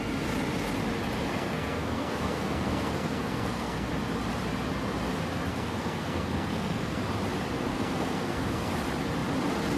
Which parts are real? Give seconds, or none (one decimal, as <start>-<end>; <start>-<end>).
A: 0.0-1.3; 3.9-5.5; 7.0-7.7; 8.7-9.8